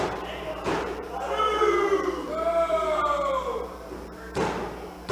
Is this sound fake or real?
fake